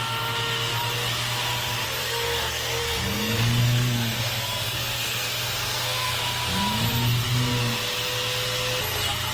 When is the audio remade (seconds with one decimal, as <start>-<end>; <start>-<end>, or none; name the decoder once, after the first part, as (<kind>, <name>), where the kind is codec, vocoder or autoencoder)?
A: 2.0-6.2 (codec, SNAC)